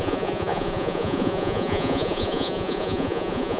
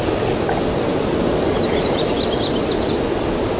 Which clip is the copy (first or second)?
first